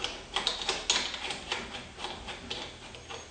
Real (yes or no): yes